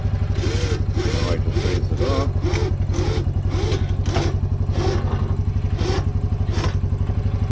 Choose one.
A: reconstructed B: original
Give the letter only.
B